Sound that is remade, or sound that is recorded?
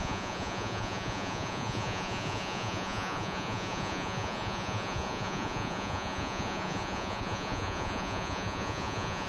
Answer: remade